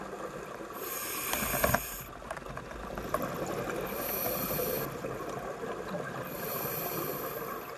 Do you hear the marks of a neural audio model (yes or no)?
no